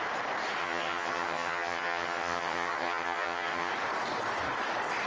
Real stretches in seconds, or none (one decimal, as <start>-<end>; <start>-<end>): 0.0-0.6; 3.7-5.1